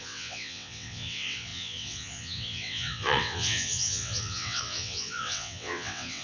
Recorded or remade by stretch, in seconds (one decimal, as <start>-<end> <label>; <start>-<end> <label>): 0.0-6.2 remade